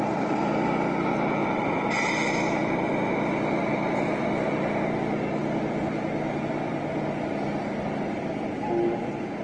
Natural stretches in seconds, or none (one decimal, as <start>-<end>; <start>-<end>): 0.0-9.4

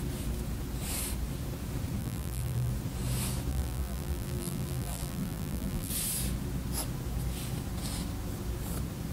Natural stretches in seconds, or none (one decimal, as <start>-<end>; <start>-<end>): 0.0-2.0; 2.7-3.5; 5.9-9.1